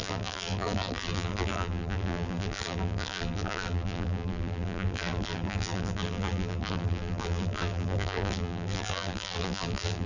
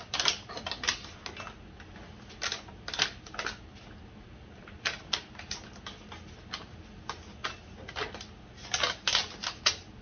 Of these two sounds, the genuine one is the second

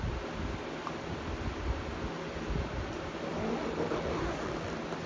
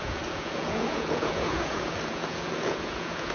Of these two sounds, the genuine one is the first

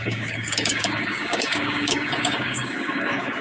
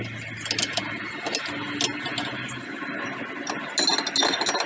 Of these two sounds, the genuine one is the second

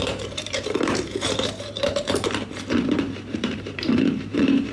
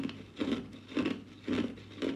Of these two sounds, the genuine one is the second